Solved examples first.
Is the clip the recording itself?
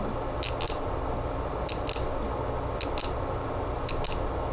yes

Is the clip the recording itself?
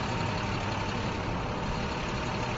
yes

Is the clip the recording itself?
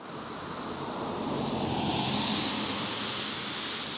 yes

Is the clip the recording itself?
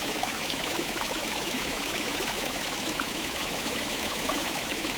no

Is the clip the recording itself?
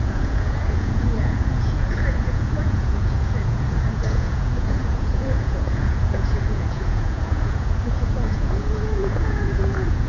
no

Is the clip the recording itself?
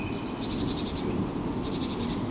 yes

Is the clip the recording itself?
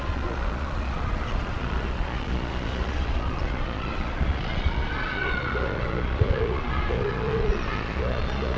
no